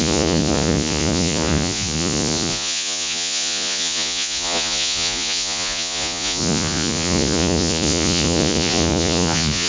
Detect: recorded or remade remade